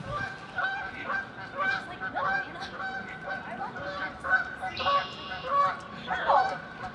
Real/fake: real